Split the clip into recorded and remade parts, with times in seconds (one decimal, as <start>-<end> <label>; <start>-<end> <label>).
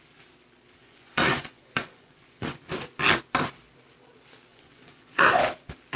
0.0-0.8 recorded; 0.8-2.6 remade; 2.6-4.5 recorded; 4.5-5.4 remade; 5.4-6.0 recorded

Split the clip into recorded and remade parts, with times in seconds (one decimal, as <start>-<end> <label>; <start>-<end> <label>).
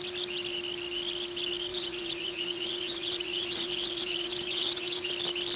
0.0-1.7 recorded; 1.7-5.1 remade; 5.1-5.6 recorded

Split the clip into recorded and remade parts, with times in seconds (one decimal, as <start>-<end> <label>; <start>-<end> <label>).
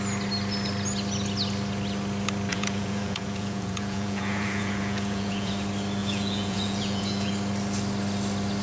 0.0-2.5 recorded; 2.5-5.5 remade; 5.5-6.0 recorded; 6.0-7.3 remade; 7.3-8.6 recorded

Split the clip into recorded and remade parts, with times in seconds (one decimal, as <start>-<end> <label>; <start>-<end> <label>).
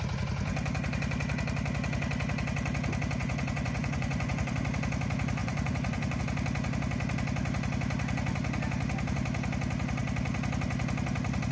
0.0-3.2 recorded; 3.2-4.5 remade; 4.5-5.4 recorded; 5.4-6.2 remade; 6.2-11.5 recorded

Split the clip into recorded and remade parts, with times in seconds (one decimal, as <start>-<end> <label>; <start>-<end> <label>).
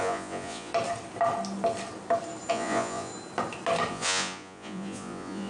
0.0-0.7 remade; 0.7-2.5 recorded; 2.5-3.1 remade; 3.1-3.9 recorded; 3.9-5.5 remade